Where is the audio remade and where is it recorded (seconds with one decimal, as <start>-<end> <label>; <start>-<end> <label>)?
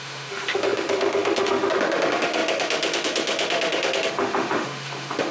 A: 0.0-5.3 remade